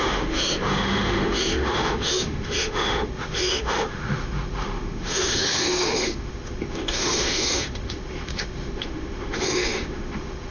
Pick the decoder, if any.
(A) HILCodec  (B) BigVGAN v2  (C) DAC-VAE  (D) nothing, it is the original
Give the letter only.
C